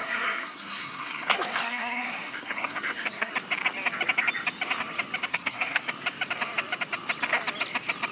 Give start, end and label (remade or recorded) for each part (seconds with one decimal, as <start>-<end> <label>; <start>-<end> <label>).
0.0-3.3 remade; 3.3-5.3 recorded; 5.3-5.9 remade; 5.9-8.1 recorded

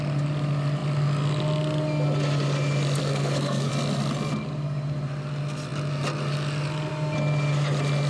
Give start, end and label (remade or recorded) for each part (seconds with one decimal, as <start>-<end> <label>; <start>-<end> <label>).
0.0-3.0 recorded; 3.0-3.7 remade; 3.7-8.1 recorded